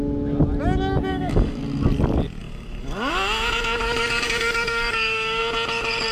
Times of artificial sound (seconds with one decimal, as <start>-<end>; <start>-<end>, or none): 1.1-1.6; 2.4-3.1; 3.8-5.4